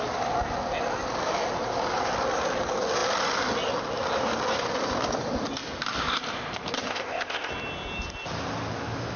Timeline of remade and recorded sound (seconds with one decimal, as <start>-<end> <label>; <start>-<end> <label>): 0.0-6.9 recorded; 6.9-7.5 remade; 7.5-9.2 recorded